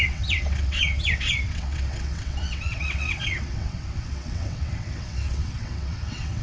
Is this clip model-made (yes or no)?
yes